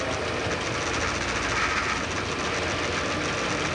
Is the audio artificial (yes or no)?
no